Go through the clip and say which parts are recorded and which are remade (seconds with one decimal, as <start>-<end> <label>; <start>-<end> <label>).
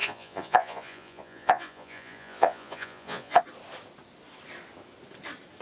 0.0-3.4 remade; 3.4-5.6 recorded